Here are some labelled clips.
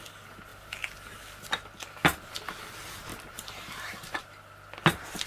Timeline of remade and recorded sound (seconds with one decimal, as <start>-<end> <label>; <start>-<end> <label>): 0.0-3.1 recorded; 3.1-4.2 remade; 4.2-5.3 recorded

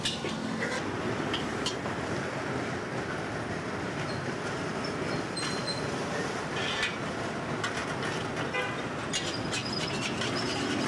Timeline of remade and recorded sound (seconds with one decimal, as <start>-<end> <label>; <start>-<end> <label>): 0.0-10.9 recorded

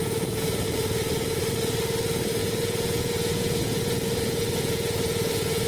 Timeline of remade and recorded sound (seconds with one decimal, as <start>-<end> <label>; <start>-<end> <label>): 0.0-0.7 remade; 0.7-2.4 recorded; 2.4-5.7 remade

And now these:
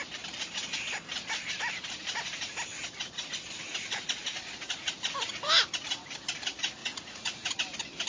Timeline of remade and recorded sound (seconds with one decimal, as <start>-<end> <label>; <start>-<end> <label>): 0.0-3.7 recorded; 3.7-4.9 remade; 4.9-6.8 recorded; 6.8-7.5 remade; 7.5-8.1 recorded

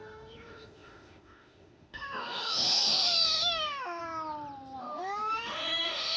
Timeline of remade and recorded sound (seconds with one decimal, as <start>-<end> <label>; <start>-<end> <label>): 0.0-4.0 remade; 4.0-4.8 recorded; 4.8-6.2 remade

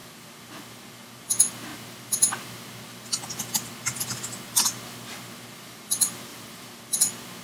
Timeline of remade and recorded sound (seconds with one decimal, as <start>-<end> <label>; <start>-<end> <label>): 0.0-6.3 recorded; 6.3-6.8 remade; 6.8-7.4 recorded

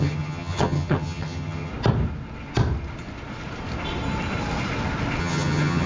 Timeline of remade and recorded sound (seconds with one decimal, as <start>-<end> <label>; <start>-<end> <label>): 0.0-1.7 remade; 1.7-5.2 recorded; 5.2-5.9 remade